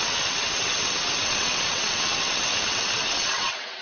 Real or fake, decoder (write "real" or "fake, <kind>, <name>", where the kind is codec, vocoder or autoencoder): fake, vocoder, WaveNeXt